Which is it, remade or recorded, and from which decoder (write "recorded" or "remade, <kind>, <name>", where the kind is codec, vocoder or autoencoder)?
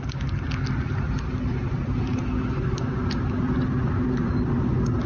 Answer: recorded